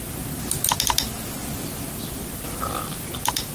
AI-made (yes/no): no